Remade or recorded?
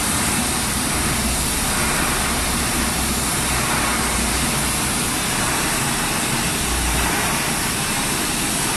remade